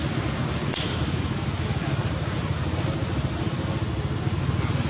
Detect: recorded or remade recorded